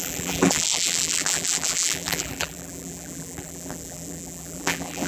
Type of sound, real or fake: fake